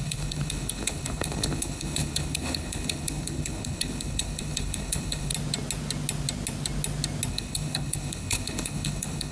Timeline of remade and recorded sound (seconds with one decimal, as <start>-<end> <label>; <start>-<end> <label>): 0.0-5.3 remade; 5.3-7.3 recorded; 7.3-9.3 remade